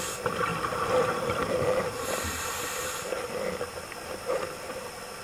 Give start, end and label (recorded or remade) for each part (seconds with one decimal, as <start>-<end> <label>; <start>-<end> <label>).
0.0-0.5 recorded; 0.5-3.6 remade; 3.6-5.2 recorded